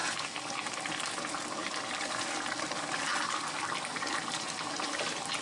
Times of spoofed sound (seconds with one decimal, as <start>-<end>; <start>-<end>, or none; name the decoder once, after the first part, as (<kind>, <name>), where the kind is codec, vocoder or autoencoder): none